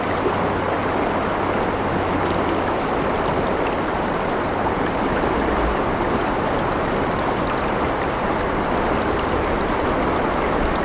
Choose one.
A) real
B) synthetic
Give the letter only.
A